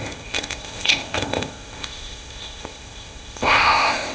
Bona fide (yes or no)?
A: no